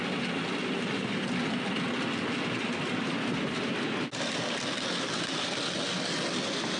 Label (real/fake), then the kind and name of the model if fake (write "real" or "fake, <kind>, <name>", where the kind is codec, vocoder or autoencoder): real